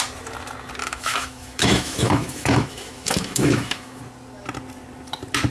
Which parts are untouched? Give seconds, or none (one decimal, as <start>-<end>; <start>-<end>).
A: 0.0-0.8; 4.0-5.5